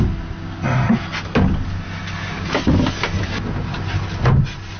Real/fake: real